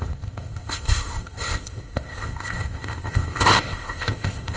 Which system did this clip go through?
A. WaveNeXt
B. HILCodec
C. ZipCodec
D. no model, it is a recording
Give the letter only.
C